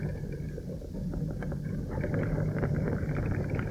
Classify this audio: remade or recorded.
recorded